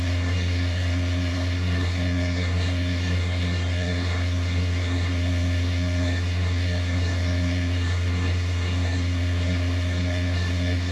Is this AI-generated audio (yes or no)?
yes